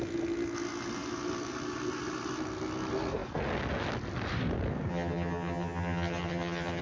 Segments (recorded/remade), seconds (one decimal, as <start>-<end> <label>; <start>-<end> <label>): 0.0-4.9 recorded; 4.9-6.8 remade